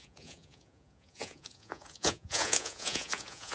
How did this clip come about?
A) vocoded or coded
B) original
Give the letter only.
A